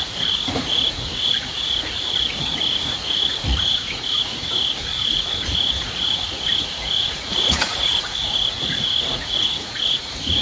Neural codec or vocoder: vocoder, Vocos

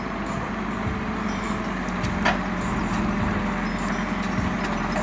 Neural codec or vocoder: none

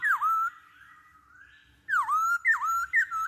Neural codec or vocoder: none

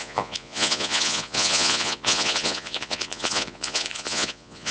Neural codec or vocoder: vocoder, Vocos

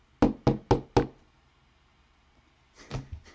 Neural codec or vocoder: none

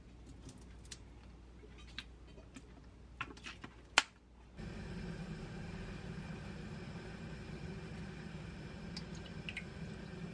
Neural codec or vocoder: none